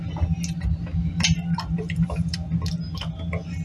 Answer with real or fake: real